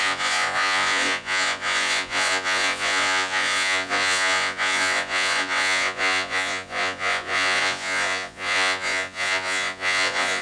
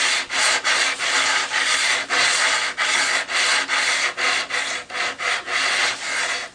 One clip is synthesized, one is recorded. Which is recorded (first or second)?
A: second